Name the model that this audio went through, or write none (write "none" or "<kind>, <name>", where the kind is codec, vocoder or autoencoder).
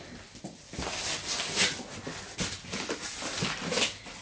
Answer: none